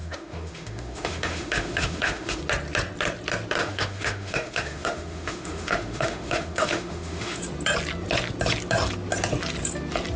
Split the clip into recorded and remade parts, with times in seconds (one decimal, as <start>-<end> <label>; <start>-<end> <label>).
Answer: 0.0-2.4 remade; 2.4-3.6 recorded; 3.6-7.4 remade; 7.4-10.2 recorded

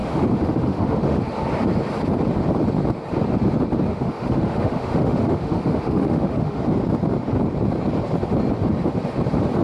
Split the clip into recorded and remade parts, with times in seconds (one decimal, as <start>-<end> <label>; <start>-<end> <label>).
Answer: 0.0-1.2 remade; 1.2-3.9 recorded; 3.9-6.6 remade; 6.6-9.6 recorded

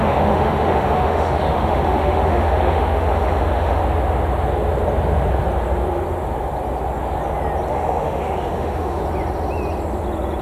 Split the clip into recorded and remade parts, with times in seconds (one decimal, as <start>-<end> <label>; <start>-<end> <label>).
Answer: 0.0-3.8 remade; 3.8-7.7 recorded; 7.7-9.0 remade; 9.0-10.4 recorded

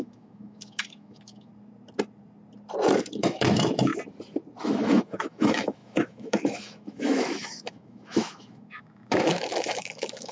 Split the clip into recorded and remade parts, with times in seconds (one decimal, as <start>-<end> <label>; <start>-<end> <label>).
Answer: 0.0-1.5 remade; 1.5-3.2 recorded; 3.2-3.9 remade; 3.9-4.6 recorded; 4.6-10.3 remade

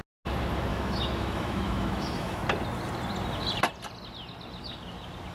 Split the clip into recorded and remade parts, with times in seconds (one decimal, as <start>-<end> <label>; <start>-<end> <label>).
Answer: 0.0-0.7 recorded; 0.7-2.4 remade; 2.4-5.3 recorded

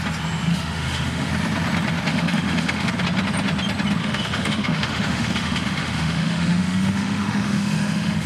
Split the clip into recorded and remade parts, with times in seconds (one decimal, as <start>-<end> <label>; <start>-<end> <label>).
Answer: 0.0-0.5 recorded; 0.5-1.3 remade; 1.3-2.1 recorded; 2.1-2.9 remade; 2.9-4.0 recorded; 4.0-8.3 remade

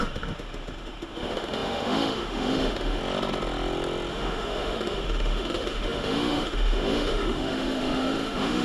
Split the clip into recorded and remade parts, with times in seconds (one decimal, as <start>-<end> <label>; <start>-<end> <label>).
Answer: 0.0-3.0 remade; 3.0-4.1 recorded; 4.1-8.6 remade